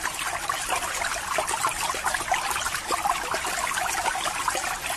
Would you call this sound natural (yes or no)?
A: yes